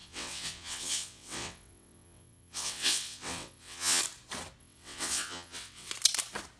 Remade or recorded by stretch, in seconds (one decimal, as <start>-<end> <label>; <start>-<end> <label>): 0.0-4.0 remade; 4.0-4.6 recorded; 4.6-5.9 remade; 5.9-6.6 recorded